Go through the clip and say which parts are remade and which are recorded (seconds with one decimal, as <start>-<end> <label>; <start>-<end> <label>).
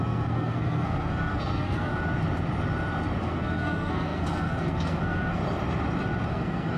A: 0.0-1.9 remade; 1.9-3.2 recorded; 3.2-5.4 remade; 5.4-6.3 recorded; 6.3-6.8 remade